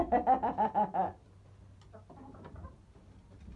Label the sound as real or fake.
real